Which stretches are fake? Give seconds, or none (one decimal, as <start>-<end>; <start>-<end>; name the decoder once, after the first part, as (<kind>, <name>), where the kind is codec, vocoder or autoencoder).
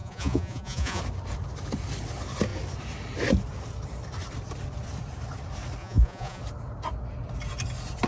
0.0-1.0 (vocoder, Vocos); 5.8-6.4